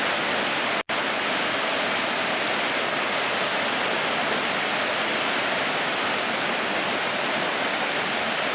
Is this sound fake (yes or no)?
no